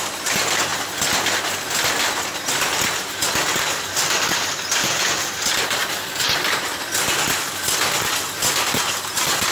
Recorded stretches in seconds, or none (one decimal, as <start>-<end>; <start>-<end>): 0.0-4.8; 5.3-9.5